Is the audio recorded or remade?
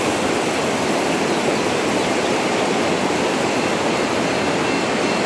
recorded